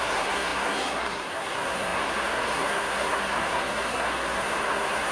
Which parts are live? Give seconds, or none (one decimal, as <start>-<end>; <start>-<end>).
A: none